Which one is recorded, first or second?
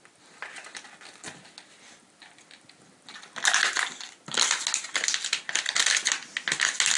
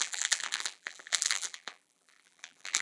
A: first